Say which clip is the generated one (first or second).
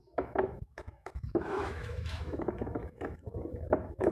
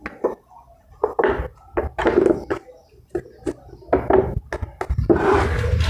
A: first